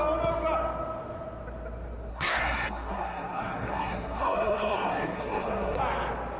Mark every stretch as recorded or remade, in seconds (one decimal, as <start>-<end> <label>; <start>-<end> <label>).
0.0-2.1 recorded; 2.1-5.8 remade; 5.8-6.4 recorded